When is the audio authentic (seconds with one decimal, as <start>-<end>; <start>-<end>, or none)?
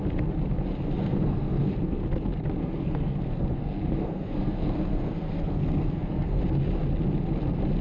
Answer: 0.0-1.0; 2.0-2.6; 6.4-7.8